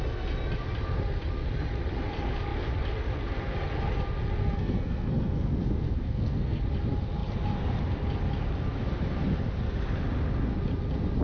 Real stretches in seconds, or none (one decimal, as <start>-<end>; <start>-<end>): 0.0-4.4; 6.6-11.2